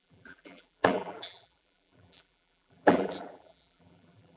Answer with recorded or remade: remade